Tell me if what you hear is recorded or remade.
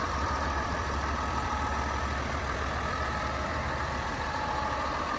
remade